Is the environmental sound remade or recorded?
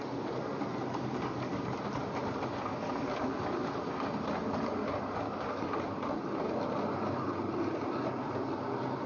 recorded